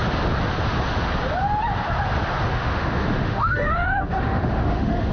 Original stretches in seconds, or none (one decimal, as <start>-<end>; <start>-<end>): 0.0-2.5